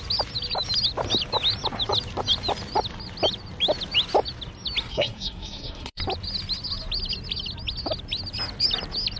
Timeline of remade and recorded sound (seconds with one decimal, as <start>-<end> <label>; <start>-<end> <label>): 0.0-4.9 recorded; 4.9-6.0 remade; 6.0-9.2 recorded